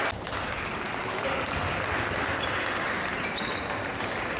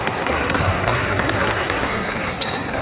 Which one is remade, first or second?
second